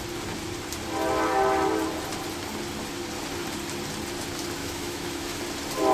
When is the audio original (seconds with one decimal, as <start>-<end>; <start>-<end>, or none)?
0.0-4.6; 5.4-5.9